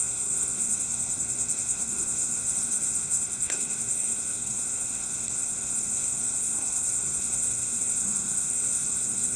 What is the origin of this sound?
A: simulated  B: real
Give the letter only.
A